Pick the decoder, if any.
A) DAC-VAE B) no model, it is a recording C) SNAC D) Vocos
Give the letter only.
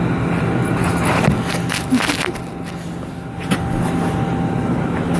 B